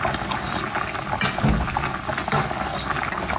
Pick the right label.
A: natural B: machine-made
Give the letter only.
A